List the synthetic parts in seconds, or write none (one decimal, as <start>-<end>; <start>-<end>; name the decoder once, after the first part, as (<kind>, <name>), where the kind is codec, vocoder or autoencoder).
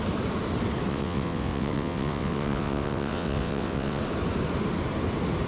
0.9-4.0 (vocoder, WaveNeXt)